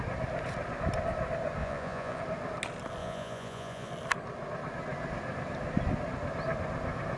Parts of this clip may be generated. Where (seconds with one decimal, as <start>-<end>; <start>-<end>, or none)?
1.6-2.2; 3.0-3.9